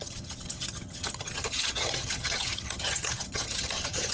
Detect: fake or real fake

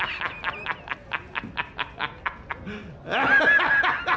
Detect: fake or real real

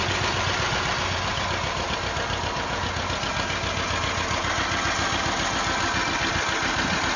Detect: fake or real real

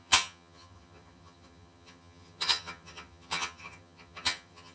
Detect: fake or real fake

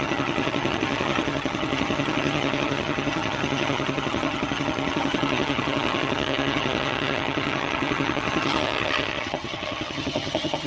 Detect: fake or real fake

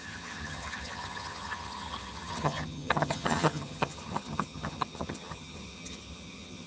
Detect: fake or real fake